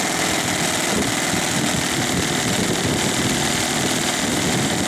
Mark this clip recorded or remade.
remade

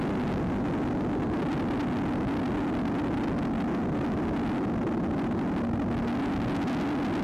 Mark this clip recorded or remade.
recorded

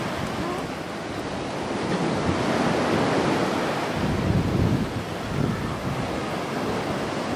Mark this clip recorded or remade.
recorded